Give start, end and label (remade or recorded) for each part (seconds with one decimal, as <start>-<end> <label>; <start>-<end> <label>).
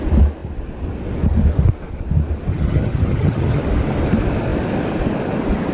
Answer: 0.0-2.5 recorded; 2.5-3.6 remade; 3.6-5.7 recorded